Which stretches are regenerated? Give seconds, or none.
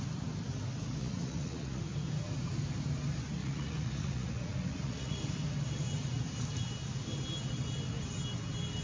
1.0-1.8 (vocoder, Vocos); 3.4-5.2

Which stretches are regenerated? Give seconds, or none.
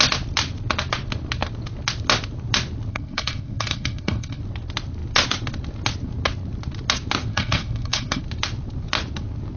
2.9-4.4 (codec, SNAC); 7.3-8.2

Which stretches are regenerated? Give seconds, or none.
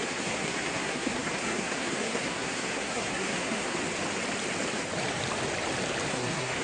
0.0-3.8 (codec, SNAC); 6.1-6.6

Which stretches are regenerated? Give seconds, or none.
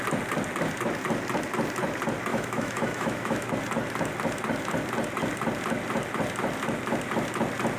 2.3-3.5 (autoencoder, DAC-VAE)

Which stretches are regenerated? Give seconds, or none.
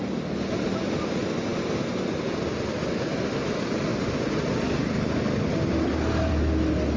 none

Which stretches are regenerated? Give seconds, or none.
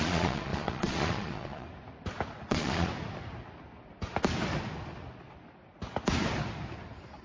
0.0-1.7 (vocoder, Vocos); 2.4-2.9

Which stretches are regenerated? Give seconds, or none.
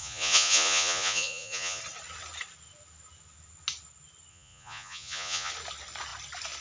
0.0-1.8 (vocoder, Vocos); 4.3-5.5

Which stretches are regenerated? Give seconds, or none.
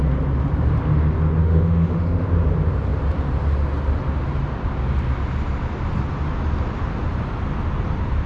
1.4-2.3 (autoencoder, DAC-VAE)